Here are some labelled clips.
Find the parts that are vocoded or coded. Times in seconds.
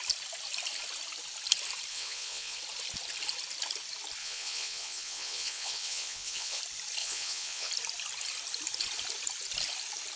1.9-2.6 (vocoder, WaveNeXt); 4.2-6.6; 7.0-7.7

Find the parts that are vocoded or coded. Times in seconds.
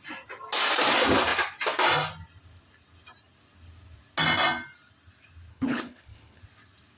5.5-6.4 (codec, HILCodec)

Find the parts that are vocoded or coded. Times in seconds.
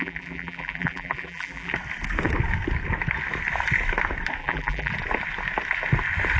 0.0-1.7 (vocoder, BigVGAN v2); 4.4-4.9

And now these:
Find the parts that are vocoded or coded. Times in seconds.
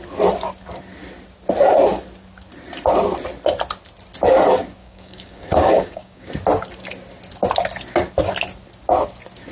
4.8-6.3 (codec, DAC)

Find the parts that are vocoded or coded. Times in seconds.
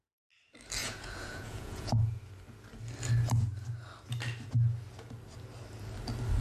0.8-2.2 (vocoder, Vocos)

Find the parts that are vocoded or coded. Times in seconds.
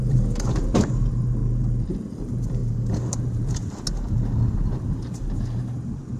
0.0-1.4 (vocoder, BigVGAN v2); 1.9-2.6; 3.1-3.6; 5.0-6.2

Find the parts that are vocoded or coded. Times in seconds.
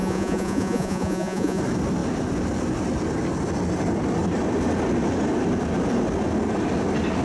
0.0-1.6 (vocoder, Vocos)